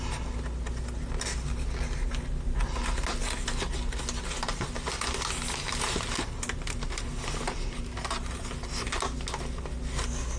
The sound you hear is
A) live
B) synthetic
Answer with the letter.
A